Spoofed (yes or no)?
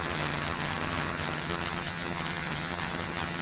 yes